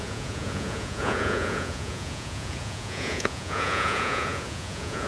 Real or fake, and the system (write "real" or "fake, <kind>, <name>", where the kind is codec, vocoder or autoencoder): fake, vocoder, Vocos